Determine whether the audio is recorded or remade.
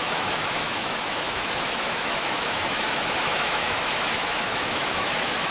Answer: remade